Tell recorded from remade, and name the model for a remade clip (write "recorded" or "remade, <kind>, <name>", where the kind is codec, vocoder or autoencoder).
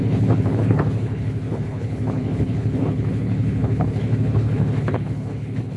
remade, codec, HILCodec